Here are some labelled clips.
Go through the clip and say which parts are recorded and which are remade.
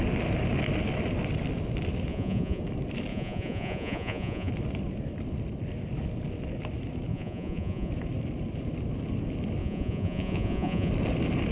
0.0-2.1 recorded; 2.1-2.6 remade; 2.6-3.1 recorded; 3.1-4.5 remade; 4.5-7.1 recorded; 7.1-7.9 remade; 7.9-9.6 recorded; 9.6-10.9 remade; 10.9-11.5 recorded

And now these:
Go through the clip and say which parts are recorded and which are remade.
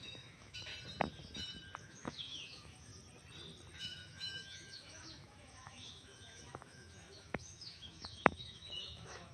0.0-0.7 remade; 0.7-1.8 recorded; 1.8-2.9 remade; 2.9-3.8 recorded; 3.8-9.3 remade